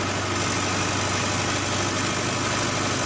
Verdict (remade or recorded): recorded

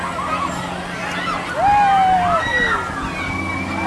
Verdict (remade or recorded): recorded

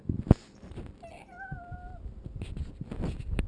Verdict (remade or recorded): recorded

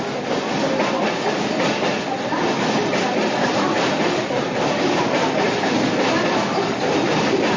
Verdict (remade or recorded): recorded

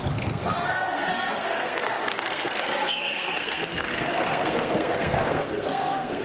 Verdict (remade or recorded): remade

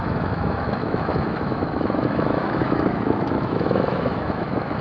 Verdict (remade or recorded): remade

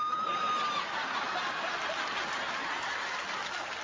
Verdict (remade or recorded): recorded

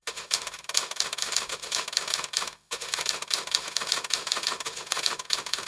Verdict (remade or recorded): remade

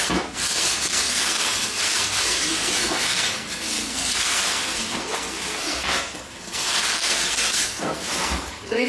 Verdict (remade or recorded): remade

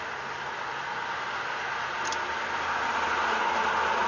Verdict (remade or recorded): recorded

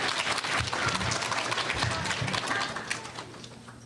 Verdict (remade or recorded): recorded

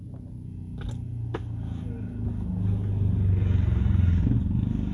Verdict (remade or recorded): recorded